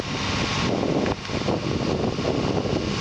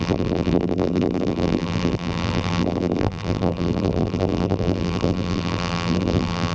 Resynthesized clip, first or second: second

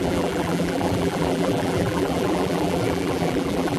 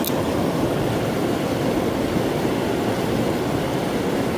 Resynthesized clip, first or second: first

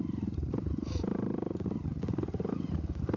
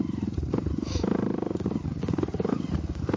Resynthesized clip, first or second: second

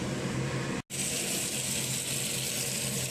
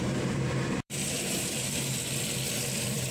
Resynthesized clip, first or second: second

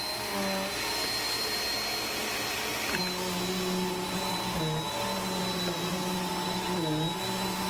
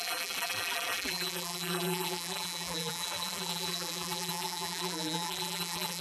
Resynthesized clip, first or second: second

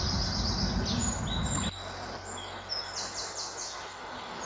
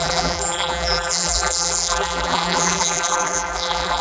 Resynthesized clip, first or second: second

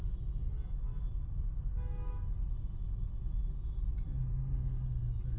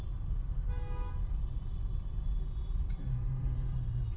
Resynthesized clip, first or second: second